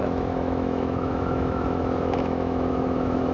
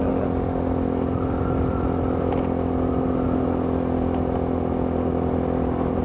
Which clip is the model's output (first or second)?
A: first